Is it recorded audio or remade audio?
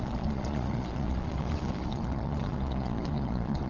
remade